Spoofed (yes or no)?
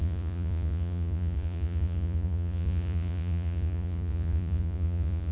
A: yes